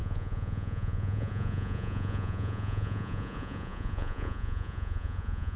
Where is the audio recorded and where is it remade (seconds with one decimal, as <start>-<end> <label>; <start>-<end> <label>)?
0.0-5.6 remade